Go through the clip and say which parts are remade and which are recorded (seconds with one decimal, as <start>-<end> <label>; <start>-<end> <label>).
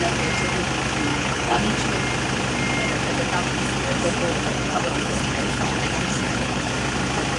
0.0-1.1 recorded; 1.1-1.6 remade; 1.6-4.5 recorded; 4.5-6.7 remade; 6.7-7.4 recorded